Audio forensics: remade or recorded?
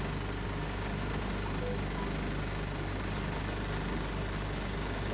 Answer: recorded